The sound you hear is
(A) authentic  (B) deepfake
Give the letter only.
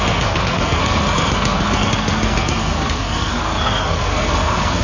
B